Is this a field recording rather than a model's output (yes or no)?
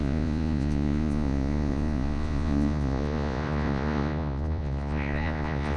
no